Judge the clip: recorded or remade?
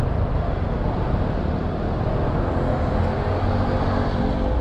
recorded